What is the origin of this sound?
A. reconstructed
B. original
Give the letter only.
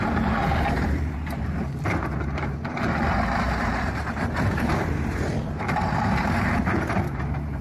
A